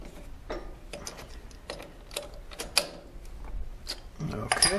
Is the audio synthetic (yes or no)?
no